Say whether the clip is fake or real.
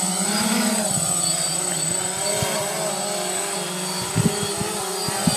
real